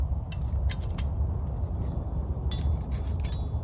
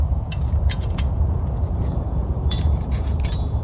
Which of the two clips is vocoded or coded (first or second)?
second